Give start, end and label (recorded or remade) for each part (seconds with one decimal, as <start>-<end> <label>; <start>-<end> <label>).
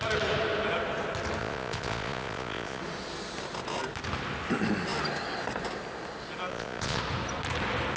0.0-1.4 recorded; 1.4-2.8 remade; 2.8-6.5 recorded; 6.5-7.0 remade; 7.0-8.0 recorded